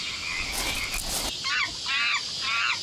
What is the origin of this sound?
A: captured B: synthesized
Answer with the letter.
A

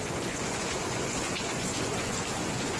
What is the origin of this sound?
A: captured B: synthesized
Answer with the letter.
B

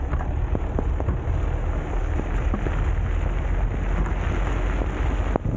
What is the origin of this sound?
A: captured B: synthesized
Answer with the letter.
A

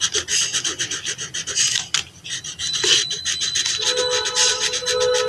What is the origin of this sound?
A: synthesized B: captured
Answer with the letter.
B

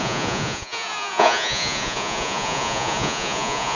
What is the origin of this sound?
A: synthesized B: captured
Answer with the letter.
A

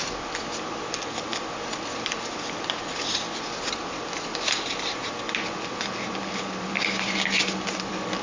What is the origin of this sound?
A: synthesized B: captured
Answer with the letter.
B